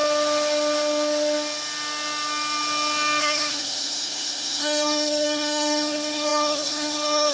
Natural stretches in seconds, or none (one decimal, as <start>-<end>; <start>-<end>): 0.0-3.2